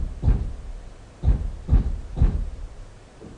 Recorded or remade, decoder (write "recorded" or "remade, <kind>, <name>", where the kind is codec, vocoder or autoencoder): remade, vocoder, BigVGAN v2